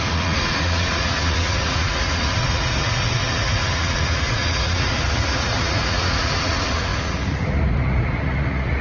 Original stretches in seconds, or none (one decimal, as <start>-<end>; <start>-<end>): none